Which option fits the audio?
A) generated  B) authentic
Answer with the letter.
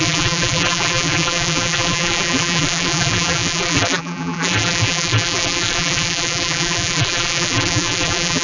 A